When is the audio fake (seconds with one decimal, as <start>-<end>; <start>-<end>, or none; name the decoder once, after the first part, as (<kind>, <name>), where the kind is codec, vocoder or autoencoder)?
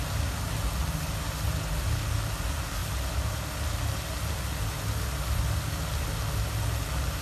none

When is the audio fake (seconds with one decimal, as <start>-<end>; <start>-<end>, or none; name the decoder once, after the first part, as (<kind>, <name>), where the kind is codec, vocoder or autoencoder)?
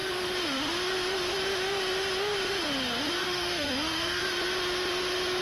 3.2-4.2 (autoencoder, DAC-VAE)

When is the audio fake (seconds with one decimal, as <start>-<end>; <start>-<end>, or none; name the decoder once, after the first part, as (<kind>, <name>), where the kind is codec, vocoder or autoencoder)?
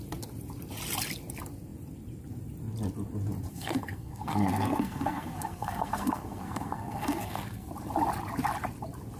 3.5-7.7 (codec, SNAC)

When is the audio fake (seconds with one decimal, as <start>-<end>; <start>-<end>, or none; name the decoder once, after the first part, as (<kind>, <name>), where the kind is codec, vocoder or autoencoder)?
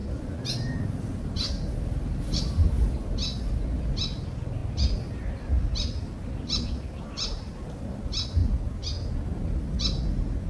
none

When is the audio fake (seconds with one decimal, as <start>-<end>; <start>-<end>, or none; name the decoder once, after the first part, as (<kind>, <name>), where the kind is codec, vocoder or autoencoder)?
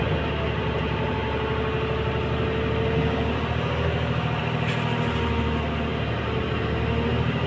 none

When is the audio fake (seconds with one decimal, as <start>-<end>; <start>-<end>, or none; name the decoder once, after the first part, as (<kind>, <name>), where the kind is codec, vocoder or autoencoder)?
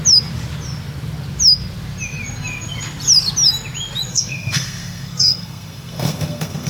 4.1-6.7 (codec, SNAC)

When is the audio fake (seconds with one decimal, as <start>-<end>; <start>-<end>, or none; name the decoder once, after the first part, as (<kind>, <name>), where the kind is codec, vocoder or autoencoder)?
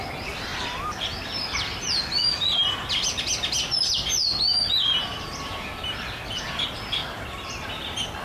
0.5-1.8 (vocoder, BigVGAN v2); 7.0-7.7